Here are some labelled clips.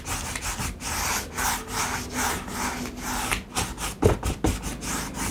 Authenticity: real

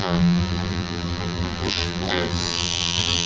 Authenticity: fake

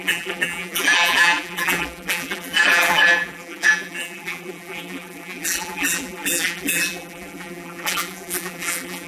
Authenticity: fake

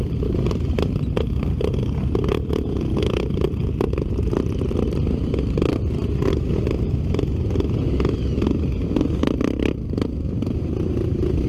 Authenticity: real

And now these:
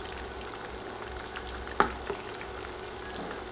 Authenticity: real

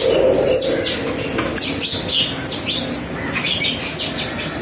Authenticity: real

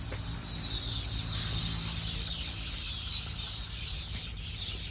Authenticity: real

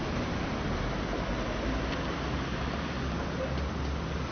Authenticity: real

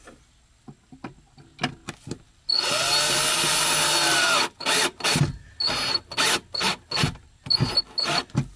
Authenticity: real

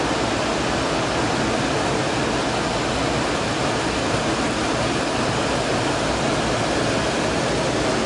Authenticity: real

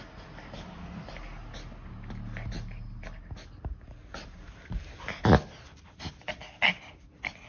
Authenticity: real